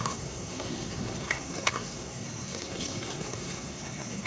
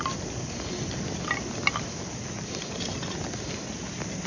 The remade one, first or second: first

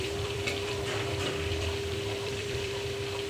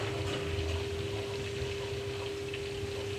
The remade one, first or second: first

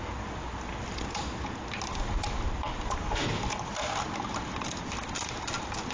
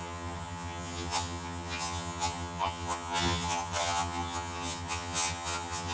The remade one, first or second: second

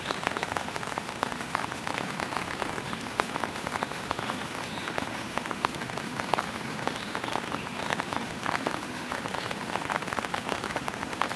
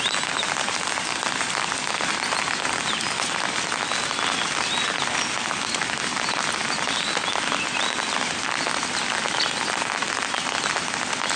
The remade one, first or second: first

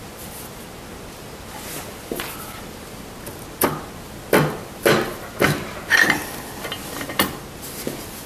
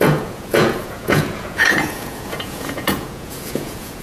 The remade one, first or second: second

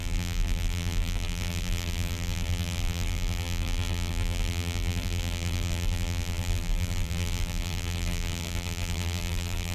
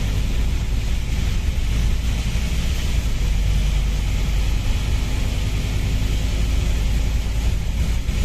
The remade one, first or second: first